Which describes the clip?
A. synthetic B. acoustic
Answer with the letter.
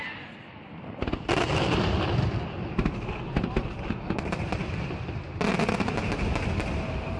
B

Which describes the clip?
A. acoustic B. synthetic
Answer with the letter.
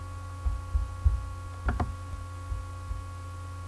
A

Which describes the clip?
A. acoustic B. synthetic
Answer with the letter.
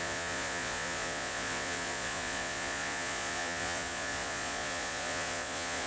B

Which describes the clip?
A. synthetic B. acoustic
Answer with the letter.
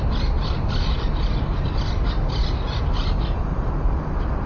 B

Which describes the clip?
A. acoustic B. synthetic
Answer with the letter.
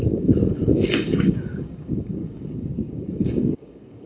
B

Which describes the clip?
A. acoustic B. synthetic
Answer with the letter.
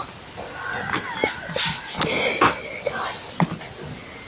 A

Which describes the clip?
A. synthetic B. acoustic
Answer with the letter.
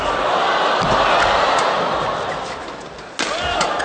B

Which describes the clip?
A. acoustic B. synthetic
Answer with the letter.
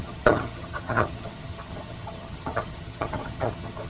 B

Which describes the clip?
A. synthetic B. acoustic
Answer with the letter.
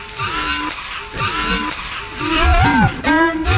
B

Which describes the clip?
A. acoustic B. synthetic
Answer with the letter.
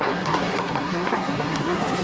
B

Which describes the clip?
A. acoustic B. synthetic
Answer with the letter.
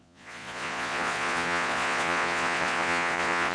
B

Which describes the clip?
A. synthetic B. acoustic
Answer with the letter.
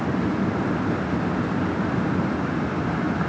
B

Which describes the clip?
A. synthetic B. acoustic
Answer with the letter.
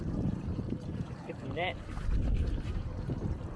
A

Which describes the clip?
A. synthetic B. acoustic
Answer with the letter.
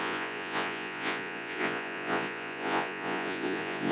A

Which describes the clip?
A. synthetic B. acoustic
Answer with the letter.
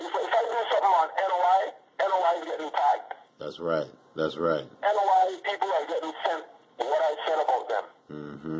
B